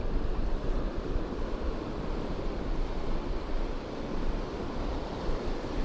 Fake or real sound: fake